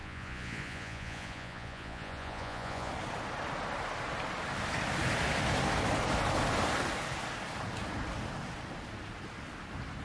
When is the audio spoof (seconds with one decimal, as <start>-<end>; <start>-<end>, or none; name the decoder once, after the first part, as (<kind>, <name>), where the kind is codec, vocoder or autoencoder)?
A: 0.0-2.9 (vocoder, Vocos)